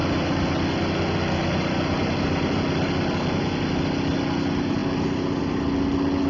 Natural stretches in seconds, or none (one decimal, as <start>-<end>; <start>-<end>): 0.0-6.3